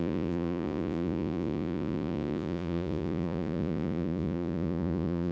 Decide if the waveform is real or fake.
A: fake